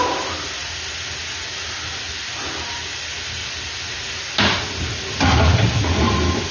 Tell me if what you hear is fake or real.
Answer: real